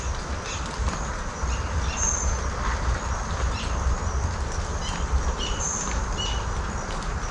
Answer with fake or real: real